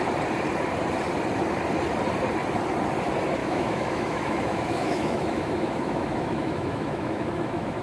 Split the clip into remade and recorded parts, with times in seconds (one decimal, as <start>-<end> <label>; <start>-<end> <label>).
0.0-3.4 recorded; 3.4-7.8 remade